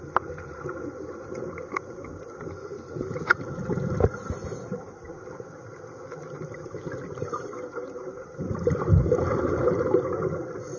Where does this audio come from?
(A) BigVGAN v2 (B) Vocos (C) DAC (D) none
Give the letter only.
D